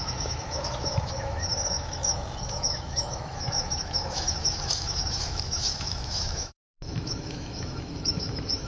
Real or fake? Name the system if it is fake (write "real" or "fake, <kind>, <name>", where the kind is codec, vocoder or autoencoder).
fake, autoencoder, DAC-VAE